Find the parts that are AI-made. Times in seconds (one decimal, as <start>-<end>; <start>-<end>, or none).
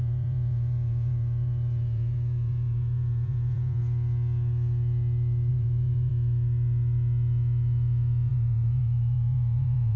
0.0-3.8; 5.5-6.1; 8.3-10.0